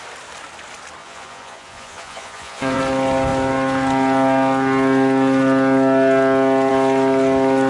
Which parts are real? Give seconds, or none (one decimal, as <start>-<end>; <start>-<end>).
0.0-1.0; 2.8-7.7